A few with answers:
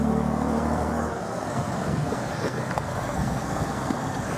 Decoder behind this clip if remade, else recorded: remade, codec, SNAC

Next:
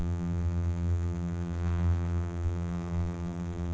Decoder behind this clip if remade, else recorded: remade, vocoder, BigVGAN v2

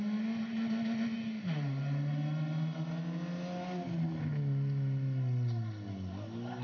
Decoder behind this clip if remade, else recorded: recorded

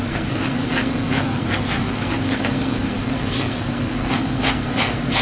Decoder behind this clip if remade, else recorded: remade, codec, SNAC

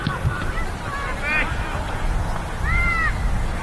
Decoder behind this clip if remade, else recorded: recorded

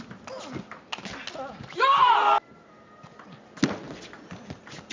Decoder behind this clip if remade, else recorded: recorded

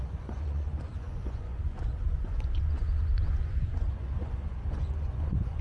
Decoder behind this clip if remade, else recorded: remade, vocoder, Vocos